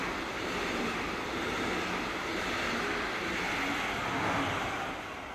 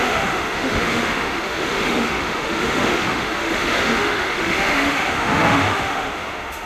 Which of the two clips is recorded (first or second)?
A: first